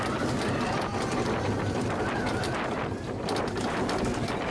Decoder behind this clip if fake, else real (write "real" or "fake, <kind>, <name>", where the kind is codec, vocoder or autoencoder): real